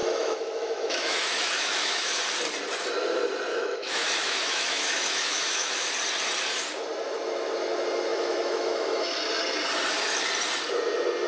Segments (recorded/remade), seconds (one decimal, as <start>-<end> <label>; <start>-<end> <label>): 0.0-2.2 remade; 2.2-3.5 recorded; 3.5-5.9 remade; 5.9-8.1 recorded; 8.1-9.2 remade; 9.2-11.3 recorded